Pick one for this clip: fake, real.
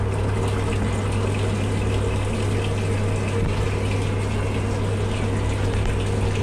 real